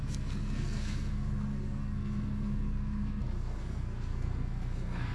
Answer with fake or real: fake